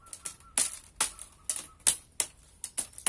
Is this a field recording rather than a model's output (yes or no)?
yes